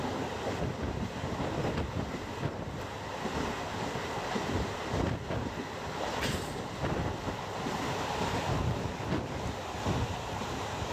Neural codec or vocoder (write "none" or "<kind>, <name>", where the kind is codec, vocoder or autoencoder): none